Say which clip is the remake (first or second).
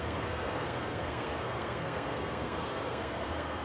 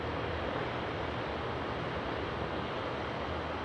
first